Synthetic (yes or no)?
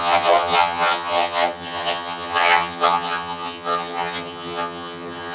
yes